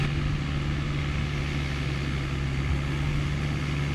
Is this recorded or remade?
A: recorded